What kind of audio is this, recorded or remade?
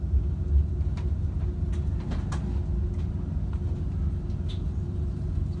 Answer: recorded